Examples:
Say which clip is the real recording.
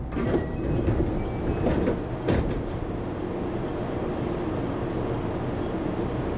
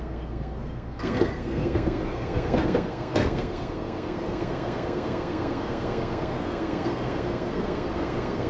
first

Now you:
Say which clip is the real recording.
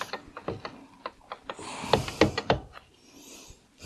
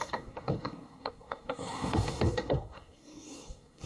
first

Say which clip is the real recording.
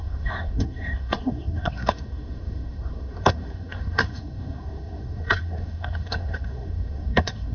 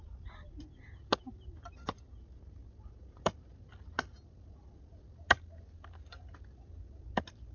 second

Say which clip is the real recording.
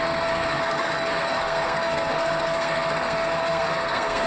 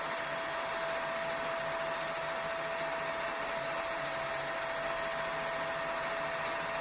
second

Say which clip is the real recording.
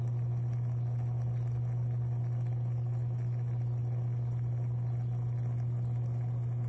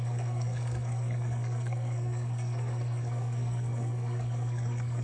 first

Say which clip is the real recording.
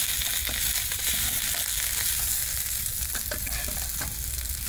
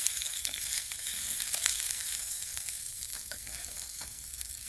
first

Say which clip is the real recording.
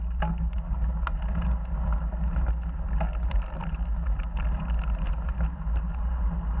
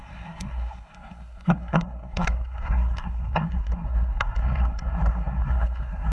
first